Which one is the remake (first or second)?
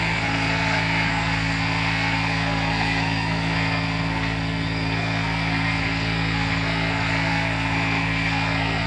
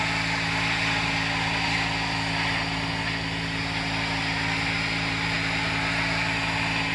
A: first